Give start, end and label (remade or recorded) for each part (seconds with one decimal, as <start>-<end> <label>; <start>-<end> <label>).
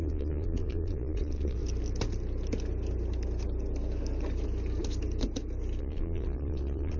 0.0-1.6 remade; 1.6-5.8 recorded; 5.8-7.0 remade